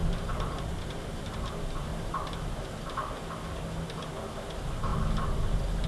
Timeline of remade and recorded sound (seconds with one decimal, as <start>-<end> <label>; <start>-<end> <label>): 0.0-1.9 remade; 1.9-4.3 recorded; 4.3-4.9 remade; 4.9-5.9 recorded